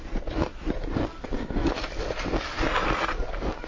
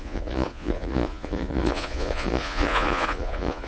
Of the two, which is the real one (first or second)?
first